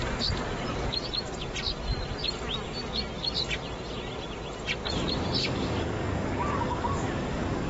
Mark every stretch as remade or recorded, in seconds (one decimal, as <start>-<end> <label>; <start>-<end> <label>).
0.0-5.4 recorded; 5.4-7.7 remade